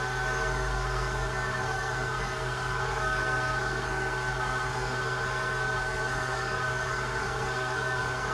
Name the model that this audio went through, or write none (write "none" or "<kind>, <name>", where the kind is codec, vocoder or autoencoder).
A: codec, SNAC